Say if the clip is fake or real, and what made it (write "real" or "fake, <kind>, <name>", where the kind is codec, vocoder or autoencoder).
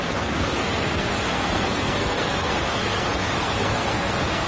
fake, codec, SNAC